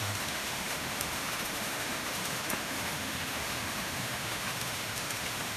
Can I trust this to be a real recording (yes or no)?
no